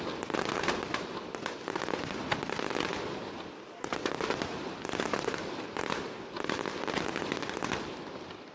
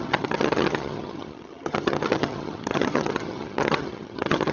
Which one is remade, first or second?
second